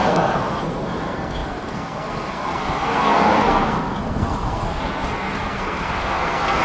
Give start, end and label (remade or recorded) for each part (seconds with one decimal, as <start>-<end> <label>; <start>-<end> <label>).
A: 0.0-6.6 remade